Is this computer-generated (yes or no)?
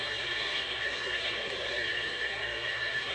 yes